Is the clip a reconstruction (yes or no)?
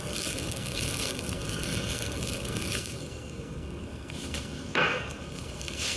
yes